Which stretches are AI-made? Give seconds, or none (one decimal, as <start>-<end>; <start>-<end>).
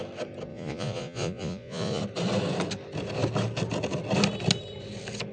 0.5-2.0